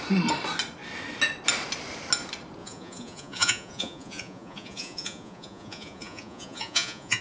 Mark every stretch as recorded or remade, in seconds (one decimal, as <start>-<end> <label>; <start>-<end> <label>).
0.0-2.6 recorded; 2.6-7.2 remade